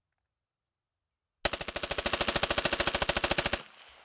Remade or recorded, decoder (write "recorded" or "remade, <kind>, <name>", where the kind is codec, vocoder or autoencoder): recorded